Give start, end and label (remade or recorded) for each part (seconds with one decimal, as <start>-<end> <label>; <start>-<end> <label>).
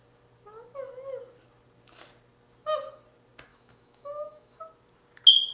0.0-3.5 recorded; 3.5-4.6 remade; 4.6-5.5 recorded